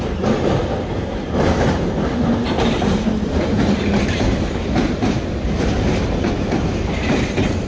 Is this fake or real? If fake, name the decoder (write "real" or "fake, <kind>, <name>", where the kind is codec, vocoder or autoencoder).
fake, vocoder, BigVGAN v2